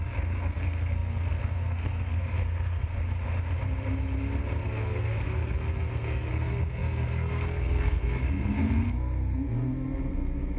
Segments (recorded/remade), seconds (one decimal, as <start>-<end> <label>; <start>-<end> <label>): 0.0-2.9 remade; 2.9-4.6 recorded; 4.6-10.6 remade